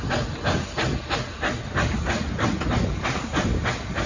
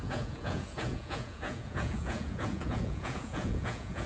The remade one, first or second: second